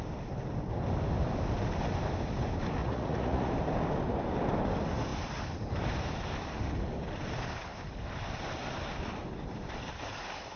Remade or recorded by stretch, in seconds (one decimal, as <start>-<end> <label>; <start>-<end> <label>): 0.0-2.8 recorded; 2.8-3.5 remade; 3.5-10.6 recorded